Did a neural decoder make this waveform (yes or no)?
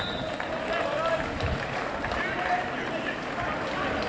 no